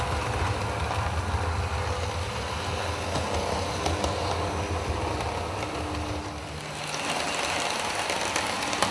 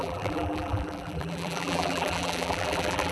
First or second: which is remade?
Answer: second